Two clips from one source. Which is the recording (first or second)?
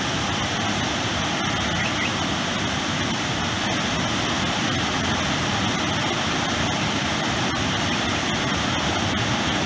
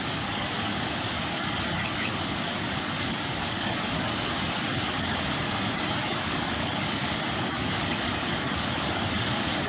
first